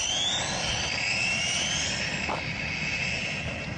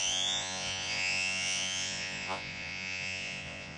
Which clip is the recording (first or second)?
first